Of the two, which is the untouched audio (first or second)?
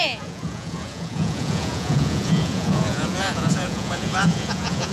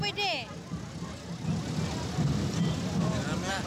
second